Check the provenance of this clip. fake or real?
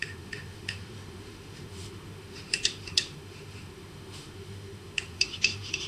fake